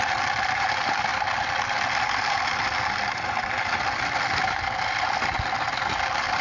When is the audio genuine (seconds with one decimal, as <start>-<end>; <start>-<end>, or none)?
0.0-6.4